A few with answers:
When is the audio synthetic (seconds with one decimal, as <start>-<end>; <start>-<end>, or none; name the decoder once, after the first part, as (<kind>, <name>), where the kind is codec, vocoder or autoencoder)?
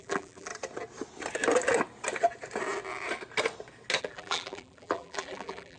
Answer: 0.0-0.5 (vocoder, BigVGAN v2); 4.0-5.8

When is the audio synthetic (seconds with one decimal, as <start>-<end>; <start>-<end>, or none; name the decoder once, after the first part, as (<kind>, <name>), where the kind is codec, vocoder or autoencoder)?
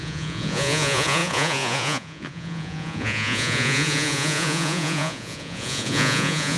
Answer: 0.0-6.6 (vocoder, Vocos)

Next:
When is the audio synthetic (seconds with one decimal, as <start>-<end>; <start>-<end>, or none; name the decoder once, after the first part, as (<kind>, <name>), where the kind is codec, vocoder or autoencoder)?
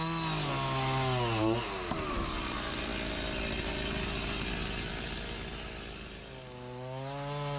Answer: none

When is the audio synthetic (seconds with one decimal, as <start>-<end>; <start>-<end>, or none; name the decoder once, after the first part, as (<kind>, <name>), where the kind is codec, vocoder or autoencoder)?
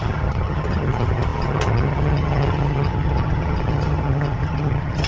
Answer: 0.0-5.1 (vocoder, HiFi-GAN)